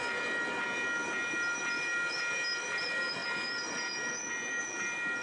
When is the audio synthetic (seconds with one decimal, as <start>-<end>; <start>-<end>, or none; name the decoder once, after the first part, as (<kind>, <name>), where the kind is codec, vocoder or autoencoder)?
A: none